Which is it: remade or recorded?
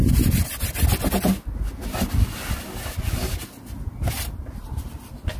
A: recorded